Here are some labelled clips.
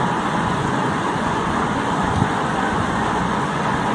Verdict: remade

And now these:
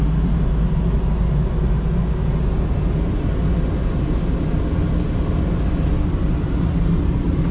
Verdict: recorded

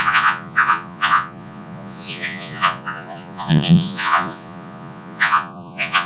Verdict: remade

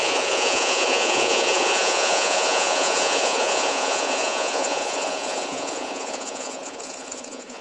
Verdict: remade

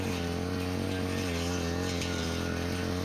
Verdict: recorded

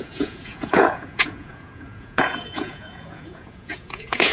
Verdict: remade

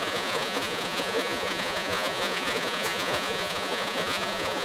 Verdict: remade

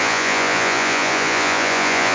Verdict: remade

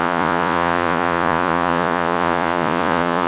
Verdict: remade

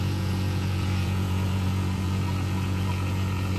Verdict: remade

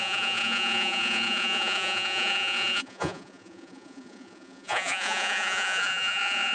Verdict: remade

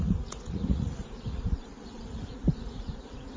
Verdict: remade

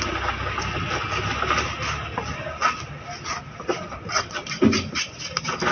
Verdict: recorded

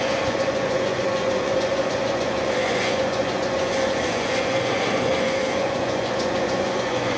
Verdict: remade